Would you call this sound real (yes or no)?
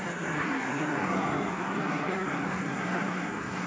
no